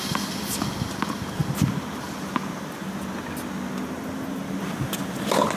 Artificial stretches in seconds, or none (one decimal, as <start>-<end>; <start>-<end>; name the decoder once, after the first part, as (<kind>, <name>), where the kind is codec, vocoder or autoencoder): none